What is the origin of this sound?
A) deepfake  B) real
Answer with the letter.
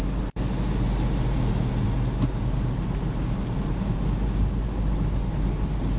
B